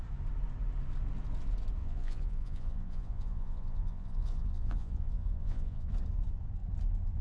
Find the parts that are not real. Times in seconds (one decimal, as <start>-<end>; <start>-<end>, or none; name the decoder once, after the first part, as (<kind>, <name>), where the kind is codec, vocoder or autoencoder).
1.8-5.9 (vocoder, Vocos)